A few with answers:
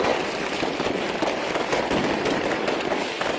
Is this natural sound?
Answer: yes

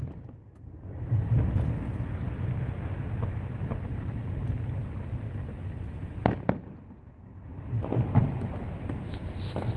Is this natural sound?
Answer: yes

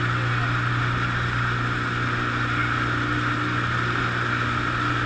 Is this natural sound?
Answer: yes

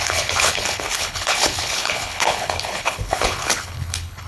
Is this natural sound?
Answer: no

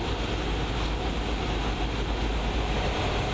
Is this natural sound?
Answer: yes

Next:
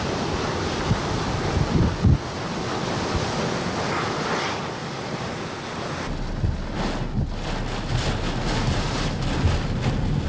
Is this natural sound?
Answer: yes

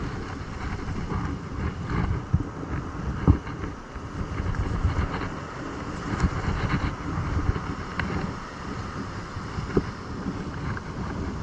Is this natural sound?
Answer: yes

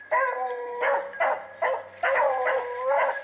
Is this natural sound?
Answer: yes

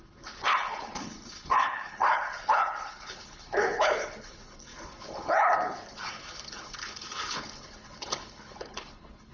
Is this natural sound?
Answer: no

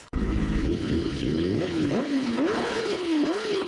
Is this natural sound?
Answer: no